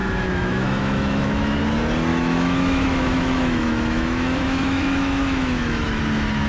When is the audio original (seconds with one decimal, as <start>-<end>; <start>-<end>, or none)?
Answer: 1.6-2.1; 6.0-6.5